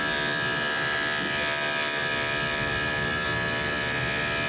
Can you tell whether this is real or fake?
real